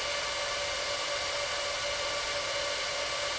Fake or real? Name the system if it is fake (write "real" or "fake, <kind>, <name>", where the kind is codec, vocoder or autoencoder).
real